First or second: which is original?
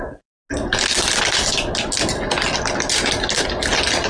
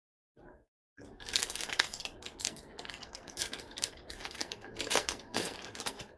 first